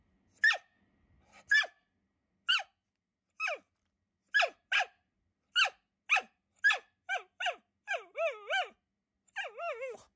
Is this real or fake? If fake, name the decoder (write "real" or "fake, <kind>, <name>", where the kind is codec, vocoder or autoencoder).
real